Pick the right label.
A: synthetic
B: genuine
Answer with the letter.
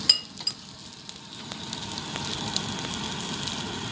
B